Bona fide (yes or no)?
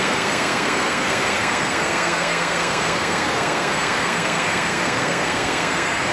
no